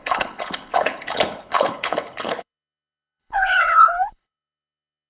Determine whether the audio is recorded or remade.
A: remade